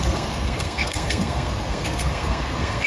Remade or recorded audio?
remade